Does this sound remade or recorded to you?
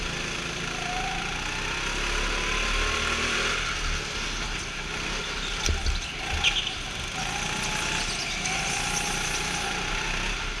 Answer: recorded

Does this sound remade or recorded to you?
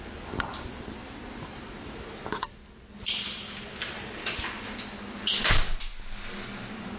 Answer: recorded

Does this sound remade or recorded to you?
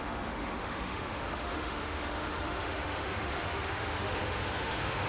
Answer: remade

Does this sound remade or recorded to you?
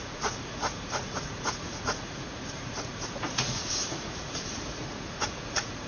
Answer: remade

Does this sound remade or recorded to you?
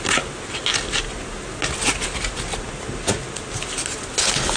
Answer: recorded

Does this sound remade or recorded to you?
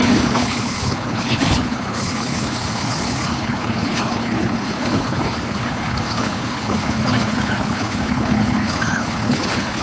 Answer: remade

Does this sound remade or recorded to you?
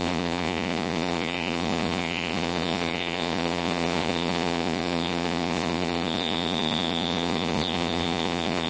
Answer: remade